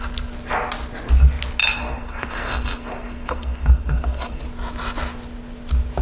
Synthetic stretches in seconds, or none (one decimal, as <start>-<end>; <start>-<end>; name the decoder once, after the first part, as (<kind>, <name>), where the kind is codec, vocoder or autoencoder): 1.6-4.4 (codec, SNAC)